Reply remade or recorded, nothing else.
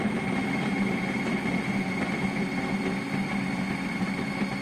recorded